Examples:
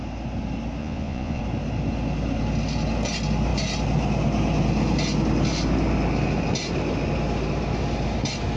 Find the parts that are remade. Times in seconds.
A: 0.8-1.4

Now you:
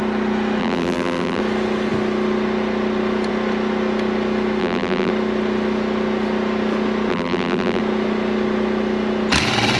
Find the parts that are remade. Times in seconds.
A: 0.6-1.4; 4.6-5.1; 7.1-7.8

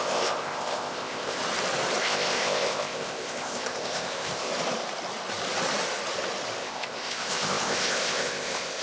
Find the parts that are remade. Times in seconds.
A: 0.0-1.4; 2.0-4.5; 6.6-8.8

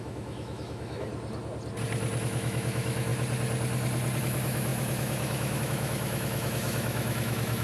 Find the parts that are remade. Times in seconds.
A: 0.0-1.1; 2.2-3.1; 4.2-7.6

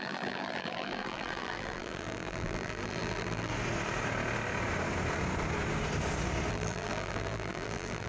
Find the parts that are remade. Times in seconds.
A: 0.0-3.5; 6.5-8.1